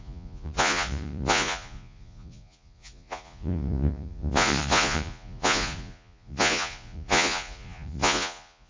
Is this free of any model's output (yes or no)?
no